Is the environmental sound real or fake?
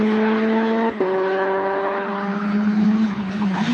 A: fake